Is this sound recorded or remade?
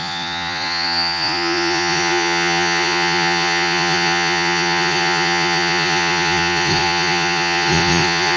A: remade